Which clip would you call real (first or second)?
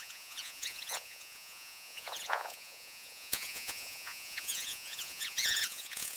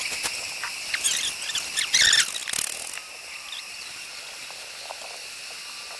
second